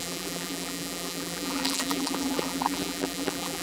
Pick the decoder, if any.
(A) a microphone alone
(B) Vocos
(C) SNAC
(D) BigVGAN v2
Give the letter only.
D